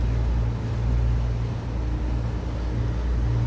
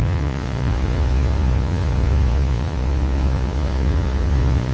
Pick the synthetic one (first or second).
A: second